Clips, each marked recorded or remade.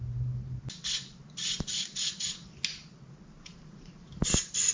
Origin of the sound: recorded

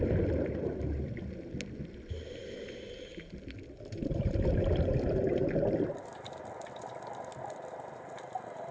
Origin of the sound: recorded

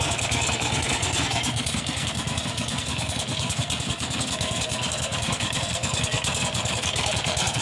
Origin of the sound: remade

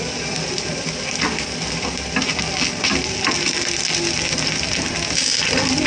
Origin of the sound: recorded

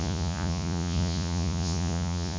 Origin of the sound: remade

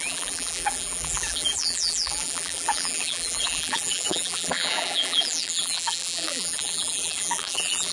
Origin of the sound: remade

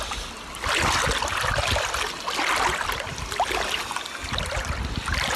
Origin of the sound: recorded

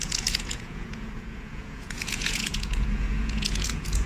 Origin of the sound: remade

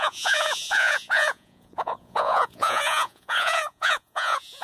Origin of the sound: remade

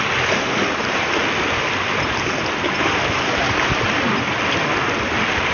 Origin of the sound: recorded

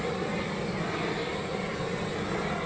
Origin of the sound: recorded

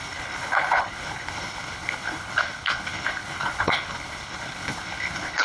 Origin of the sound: remade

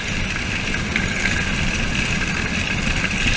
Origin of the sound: recorded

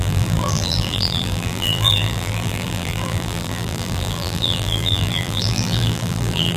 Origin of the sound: remade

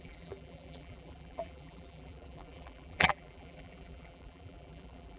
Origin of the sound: remade